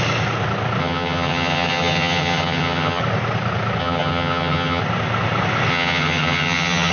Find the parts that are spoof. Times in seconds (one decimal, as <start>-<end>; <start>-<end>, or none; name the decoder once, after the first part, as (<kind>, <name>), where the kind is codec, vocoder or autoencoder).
0.8-3.0 (vocoder, HiFi-GAN); 3.8-4.8; 5.7-6.9